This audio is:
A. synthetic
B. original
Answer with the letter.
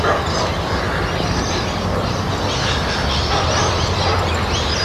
B